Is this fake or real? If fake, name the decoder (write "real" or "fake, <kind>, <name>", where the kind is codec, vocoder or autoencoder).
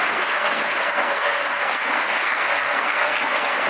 fake, codec, SNAC